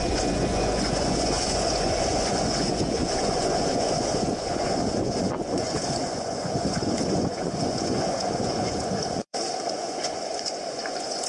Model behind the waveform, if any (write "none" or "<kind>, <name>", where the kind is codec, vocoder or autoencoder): vocoder, Vocos